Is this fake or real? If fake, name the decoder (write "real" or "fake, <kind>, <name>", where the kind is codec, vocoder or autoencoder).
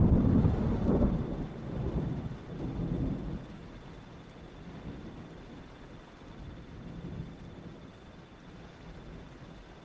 real